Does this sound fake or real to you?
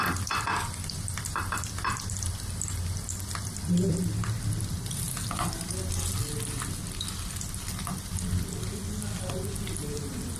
fake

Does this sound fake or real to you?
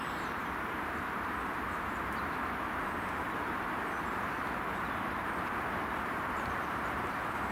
fake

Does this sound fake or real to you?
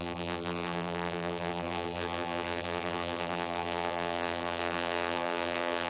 fake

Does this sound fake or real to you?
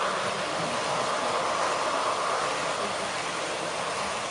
real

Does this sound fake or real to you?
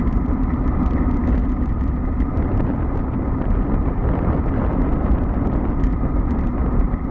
real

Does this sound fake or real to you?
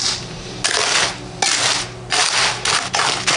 real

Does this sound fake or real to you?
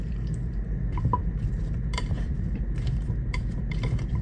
fake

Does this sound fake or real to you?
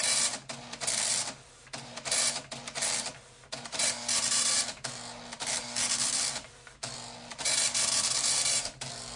fake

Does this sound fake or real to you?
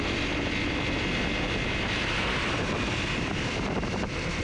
real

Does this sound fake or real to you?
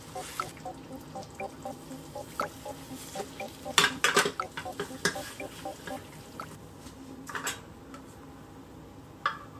real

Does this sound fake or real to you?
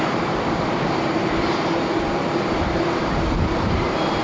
fake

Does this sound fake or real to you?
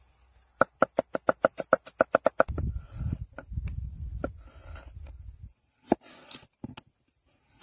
real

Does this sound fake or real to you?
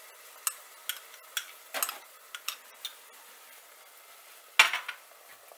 real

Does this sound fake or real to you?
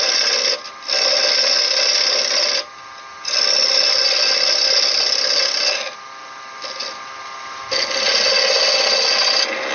real